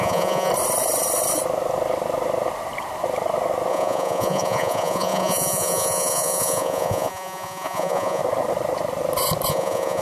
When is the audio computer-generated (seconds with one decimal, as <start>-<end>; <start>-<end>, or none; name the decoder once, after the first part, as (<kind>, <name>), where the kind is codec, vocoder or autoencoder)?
0.0-0.5 (vocoder, Vocos); 3.7-8.2; 9.5-10.0

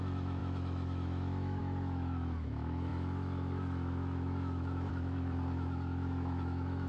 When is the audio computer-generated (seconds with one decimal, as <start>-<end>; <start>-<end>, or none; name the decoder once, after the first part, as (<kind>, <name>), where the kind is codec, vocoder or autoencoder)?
0.0-6.9 (autoencoder, DAC-VAE)

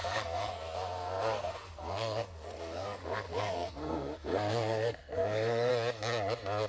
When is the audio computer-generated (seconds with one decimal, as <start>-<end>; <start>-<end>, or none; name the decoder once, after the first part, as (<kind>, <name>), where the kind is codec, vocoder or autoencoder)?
0.0-5.7 (codec, SNAC)

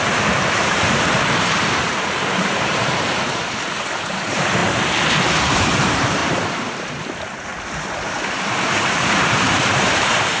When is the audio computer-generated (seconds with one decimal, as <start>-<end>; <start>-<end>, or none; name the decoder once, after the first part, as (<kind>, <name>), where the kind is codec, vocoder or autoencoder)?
0.0-4.6 (vocoder, BigVGAN v2); 5.1-7.5; 8.1-10.4

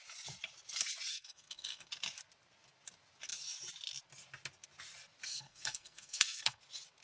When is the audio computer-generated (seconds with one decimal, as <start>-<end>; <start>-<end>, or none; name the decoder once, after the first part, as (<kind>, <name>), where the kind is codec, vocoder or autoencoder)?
1.1-1.9 (codec, SNAC); 5.3-6.6